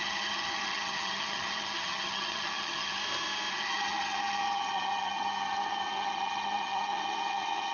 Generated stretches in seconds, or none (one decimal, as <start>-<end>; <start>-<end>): 0.0-3.0; 3.5-7.7